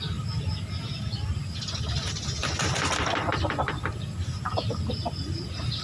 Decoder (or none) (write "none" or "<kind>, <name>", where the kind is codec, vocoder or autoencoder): none